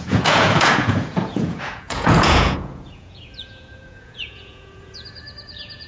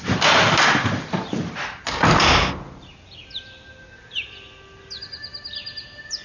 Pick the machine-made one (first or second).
first